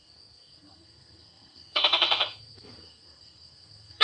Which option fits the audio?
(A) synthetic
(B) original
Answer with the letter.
A